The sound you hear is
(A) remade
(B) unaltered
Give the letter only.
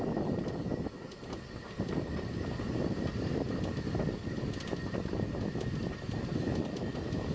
B